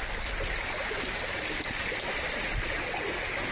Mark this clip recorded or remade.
recorded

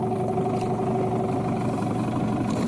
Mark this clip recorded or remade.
recorded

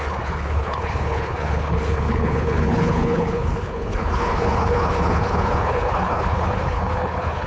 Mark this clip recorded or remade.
remade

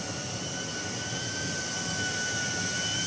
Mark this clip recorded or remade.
recorded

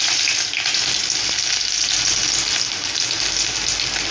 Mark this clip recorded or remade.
recorded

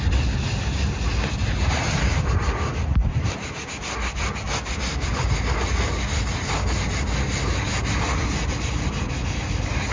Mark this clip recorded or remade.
recorded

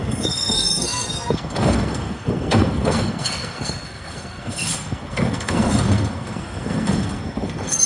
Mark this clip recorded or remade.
remade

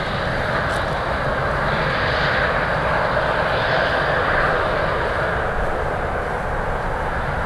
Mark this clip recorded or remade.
recorded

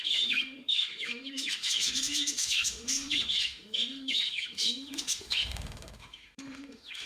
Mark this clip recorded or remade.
remade